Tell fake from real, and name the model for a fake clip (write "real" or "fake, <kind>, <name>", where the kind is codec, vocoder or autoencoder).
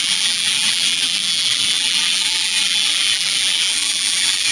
fake, vocoder, BigVGAN v2